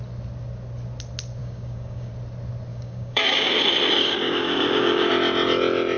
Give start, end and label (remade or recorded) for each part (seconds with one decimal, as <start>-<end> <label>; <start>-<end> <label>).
0.0-1.4 recorded; 1.4-2.1 remade; 2.1-2.7 recorded; 2.7-3.5 remade; 3.5-4.0 recorded; 4.0-5.1 remade; 5.1-6.0 recorded